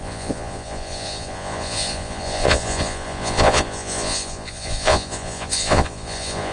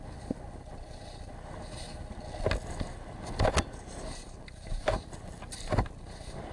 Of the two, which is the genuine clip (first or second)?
second